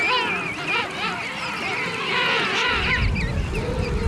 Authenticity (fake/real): real